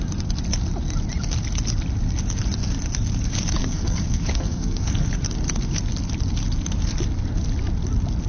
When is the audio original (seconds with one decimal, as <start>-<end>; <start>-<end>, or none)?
0.0-3.6; 5.1-8.3